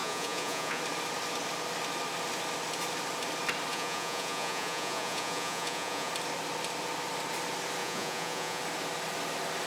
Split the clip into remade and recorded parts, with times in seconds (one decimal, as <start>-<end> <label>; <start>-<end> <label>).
0.0-0.8 remade; 0.8-3.7 recorded; 3.7-6.1 remade; 6.1-7.8 recorded; 7.8-8.6 remade; 8.6-9.7 recorded